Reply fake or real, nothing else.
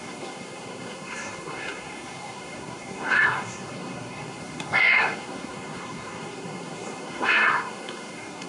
fake